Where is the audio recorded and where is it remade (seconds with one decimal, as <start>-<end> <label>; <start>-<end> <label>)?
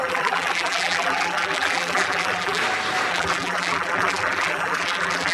0.0-2.6 remade; 2.6-3.1 recorded; 3.1-5.3 remade